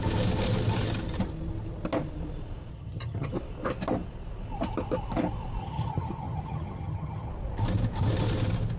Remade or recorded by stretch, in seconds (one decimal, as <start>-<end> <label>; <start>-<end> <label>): 0.0-2.7 recorded; 2.7-3.3 remade; 3.3-5.6 recorded; 5.6-7.3 remade; 7.3-8.8 recorded

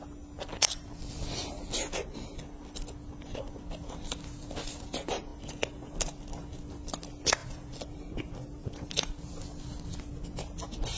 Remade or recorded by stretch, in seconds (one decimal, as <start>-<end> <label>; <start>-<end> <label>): 0.0-1.4 recorded; 1.4-2.4 remade; 2.4-7.4 recorded; 7.4-9.3 remade; 9.3-11.0 recorded

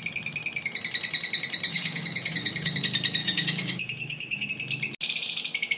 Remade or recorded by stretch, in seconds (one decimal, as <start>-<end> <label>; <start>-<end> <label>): 0.0-1.7 recorded; 1.7-2.8 remade; 2.8-3.2 recorded; 3.2-4.5 remade; 4.5-5.8 recorded